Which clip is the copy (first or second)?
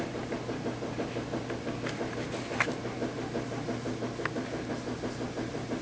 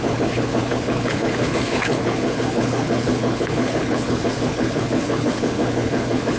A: second